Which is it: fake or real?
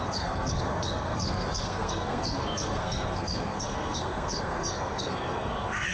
fake